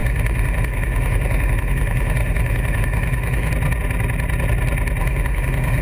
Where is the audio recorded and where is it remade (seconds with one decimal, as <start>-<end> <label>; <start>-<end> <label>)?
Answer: 0.0-3.5 remade; 3.5-5.0 recorded; 5.0-5.8 remade